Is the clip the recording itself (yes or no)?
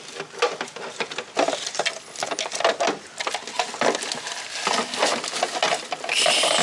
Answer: yes